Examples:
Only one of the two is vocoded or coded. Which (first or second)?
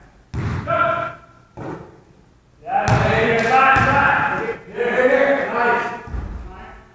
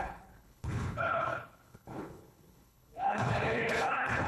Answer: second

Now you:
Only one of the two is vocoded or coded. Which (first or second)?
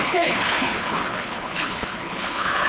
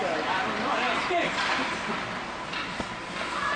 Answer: first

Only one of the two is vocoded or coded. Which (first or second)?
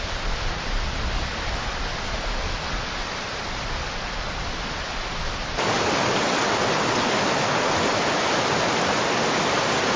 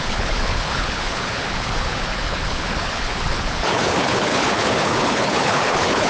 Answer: second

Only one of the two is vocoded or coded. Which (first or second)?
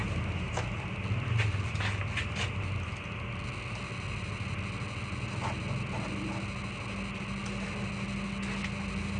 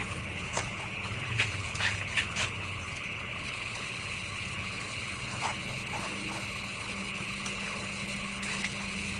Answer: second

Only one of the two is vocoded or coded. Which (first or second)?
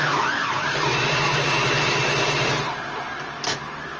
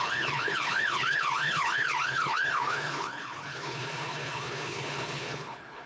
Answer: second